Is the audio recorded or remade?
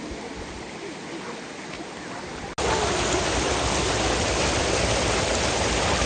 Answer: recorded